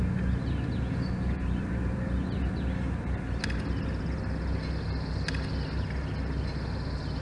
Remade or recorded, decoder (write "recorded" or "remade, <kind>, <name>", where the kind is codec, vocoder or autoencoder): recorded